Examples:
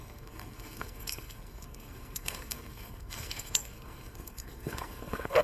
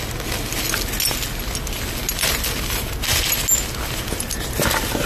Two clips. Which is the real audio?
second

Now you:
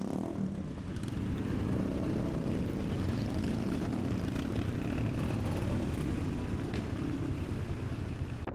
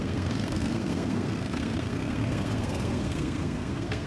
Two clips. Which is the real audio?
first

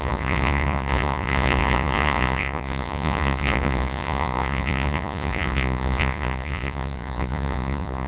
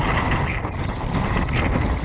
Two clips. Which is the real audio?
second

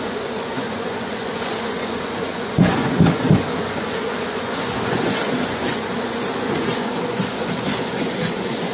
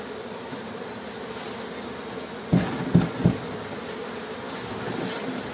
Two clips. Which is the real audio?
second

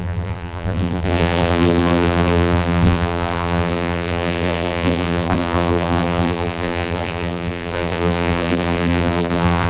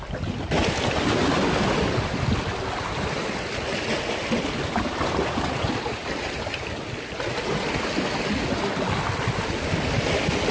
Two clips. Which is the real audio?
second